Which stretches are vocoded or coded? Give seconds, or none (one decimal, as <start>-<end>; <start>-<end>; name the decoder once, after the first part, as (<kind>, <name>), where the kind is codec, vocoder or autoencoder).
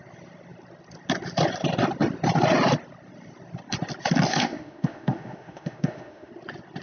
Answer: 4.3-6.3 (autoencoder, DAC-VAE)